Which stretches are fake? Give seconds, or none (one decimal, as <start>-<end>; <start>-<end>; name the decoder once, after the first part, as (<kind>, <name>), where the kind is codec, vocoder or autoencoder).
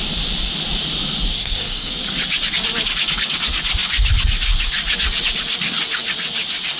1.3-1.9 (codec, SNAC)